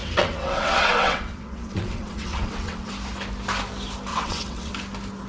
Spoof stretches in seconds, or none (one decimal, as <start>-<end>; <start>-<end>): 0.0-2.9; 4.1-4.7